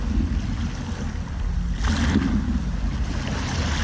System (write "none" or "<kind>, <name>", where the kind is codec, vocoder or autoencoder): none